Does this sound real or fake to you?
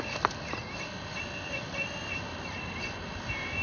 fake